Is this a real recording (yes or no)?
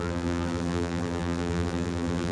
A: no